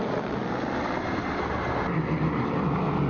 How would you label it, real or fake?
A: real